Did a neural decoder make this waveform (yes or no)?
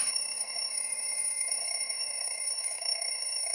yes